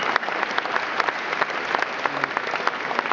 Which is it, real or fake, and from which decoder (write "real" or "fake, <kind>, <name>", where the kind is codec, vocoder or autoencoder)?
real